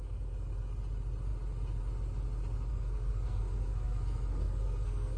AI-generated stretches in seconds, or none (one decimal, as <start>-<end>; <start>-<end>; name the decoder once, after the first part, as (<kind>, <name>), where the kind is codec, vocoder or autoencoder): 2.7-5.2 (codec, SNAC)

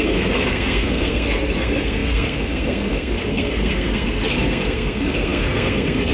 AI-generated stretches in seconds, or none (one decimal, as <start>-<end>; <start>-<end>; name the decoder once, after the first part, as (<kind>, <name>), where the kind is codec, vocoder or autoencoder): 0.0-6.1 (codec, SNAC)

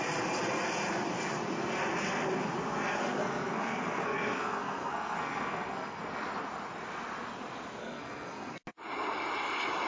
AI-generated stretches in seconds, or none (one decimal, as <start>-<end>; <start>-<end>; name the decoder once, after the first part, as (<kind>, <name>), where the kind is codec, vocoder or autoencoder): 3.0-6.0 (codec, SNAC); 7.8-8.6

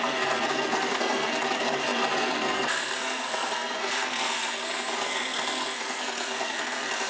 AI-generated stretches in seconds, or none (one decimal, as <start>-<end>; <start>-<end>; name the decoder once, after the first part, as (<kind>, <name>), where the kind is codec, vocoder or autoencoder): 0.0-7.1 (codec, SNAC)